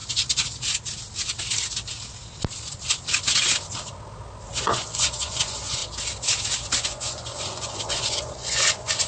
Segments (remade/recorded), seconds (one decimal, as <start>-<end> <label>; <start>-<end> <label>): 0.0-4.6 recorded; 4.6-5.8 remade; 5.8-6.8 recorded; 6.8-9.1 remade